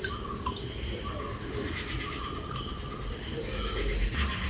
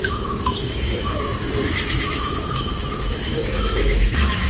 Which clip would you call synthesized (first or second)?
second